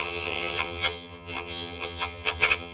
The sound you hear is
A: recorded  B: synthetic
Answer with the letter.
B